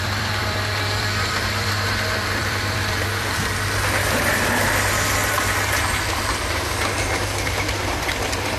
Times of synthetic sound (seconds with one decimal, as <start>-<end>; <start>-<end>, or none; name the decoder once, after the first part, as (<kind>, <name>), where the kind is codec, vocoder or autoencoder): 0.0-4.3 (vocoder, BigVGAN v2); 7.8-8.6

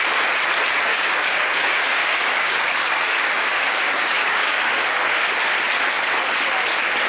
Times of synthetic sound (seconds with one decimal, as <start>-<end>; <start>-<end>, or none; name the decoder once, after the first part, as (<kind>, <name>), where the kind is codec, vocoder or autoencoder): 0.9-5.2 (codec, DAC)

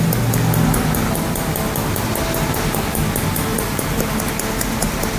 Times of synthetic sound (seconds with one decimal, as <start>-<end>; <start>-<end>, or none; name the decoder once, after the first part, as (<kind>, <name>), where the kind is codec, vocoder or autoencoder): 3.5-4.2 (vocoder, BigVGAN v2)

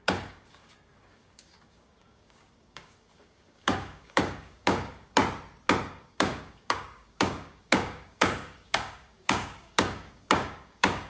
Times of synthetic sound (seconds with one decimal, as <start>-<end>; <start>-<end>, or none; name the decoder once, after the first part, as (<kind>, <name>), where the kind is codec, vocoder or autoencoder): 0.0-5.2 (codec, DAC); 5.9-11.1

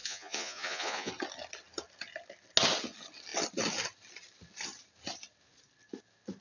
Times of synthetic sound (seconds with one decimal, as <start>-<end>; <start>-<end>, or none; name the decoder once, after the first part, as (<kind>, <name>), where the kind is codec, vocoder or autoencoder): 0.0-1.1 (vocoder, Vocos)

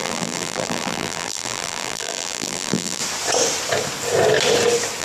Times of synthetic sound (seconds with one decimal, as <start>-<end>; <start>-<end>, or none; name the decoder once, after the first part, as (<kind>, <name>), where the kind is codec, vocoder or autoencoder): 0.0-3.0 (vocoder, BigVGAN v2)